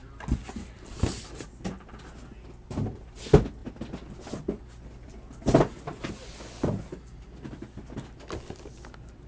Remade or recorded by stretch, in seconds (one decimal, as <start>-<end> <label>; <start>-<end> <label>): 0.0-9.3 recorded